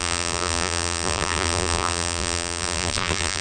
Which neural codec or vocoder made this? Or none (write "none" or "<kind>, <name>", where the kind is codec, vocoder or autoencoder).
vocoder, BigVGAN v2